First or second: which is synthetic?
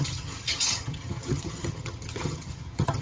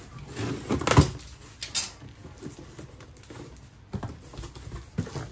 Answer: first